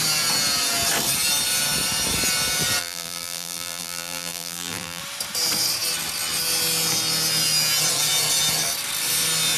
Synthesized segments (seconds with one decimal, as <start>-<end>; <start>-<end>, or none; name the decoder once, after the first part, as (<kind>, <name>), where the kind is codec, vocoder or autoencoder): 2.8-5.0 (vocoder, BigVGAN v2)